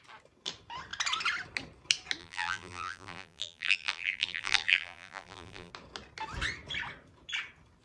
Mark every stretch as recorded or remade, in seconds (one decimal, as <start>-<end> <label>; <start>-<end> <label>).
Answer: 0.0-2.2 recorded; 2.2-5.7 remade; 5.7-7.8 recorded